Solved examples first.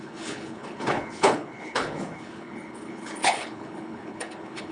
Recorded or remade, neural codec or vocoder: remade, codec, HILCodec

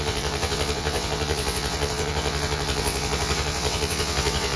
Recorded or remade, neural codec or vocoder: remade, vocoder, WaveNeXt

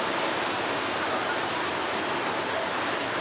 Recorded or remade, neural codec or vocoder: recorded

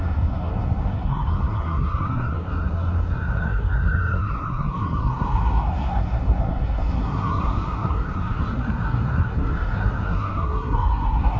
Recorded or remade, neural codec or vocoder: remade, codec, SNAC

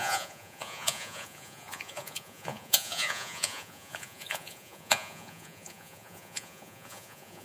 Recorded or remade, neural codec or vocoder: remade, vocoder, Vocos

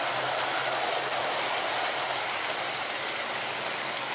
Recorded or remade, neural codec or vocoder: recorded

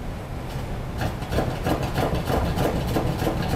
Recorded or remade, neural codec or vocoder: recorded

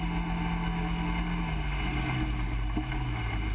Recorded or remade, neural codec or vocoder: recorded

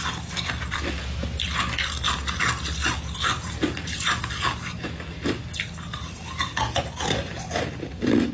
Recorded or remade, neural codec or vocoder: remade, vocoder, BigVGAN v2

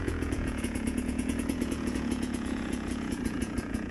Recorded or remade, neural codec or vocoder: remade, vocoder, Vocos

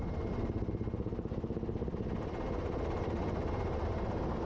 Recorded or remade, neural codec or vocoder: recorded